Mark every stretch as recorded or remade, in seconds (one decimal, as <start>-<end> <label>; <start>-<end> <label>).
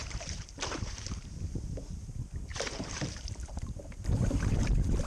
0.0-1.4 remade; 1.4-2.5 recorded; 2.5-4.1 remade; 4.1-5.1 recorded